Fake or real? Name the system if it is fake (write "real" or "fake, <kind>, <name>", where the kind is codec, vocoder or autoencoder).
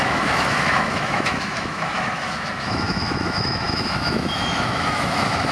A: fake, autoencoder, DAC-VAE